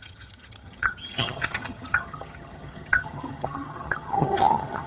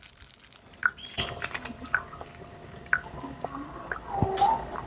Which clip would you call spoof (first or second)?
first